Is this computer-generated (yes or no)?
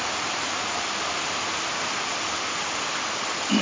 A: no